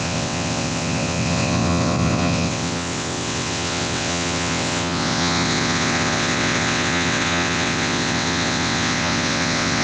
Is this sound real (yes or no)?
no